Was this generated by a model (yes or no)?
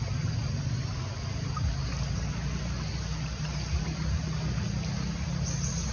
no